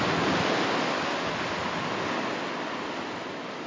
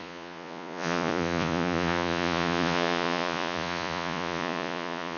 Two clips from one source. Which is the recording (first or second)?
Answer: first